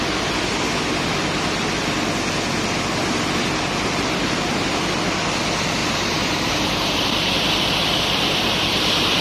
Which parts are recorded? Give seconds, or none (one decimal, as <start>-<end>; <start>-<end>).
0.0-5.8; 7.3-9.2